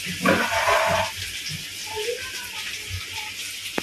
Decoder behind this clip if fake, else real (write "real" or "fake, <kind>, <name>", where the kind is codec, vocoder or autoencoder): real